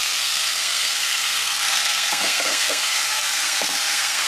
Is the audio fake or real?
fake